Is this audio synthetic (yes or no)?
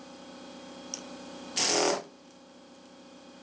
no